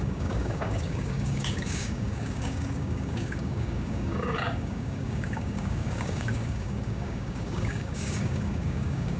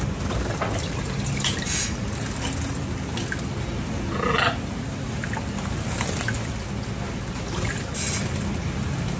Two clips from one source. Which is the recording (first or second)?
second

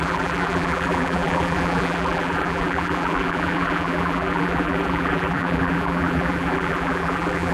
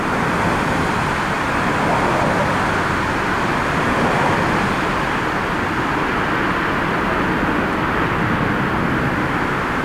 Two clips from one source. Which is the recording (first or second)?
second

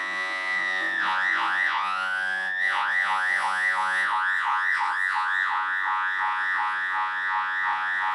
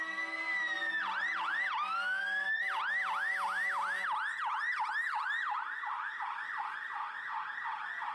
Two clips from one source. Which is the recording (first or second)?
second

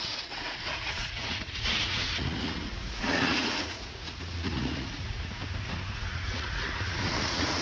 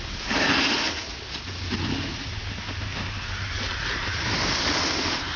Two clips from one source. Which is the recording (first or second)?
second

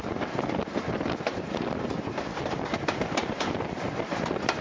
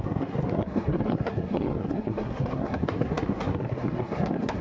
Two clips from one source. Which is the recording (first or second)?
first